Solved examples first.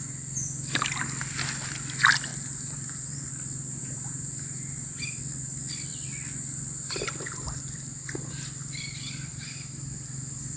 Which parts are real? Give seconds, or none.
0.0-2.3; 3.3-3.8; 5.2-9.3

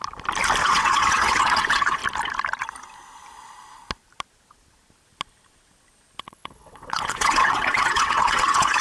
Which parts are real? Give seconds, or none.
0.0-0.6; 2.0-6.2

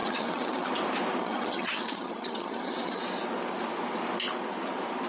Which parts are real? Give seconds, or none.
0.7-1.2; 3.0-5.1

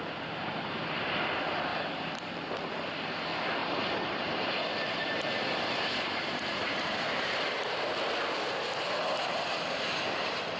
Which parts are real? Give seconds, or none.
0.0-1.7; 2.6-3.6; 7.7-10.6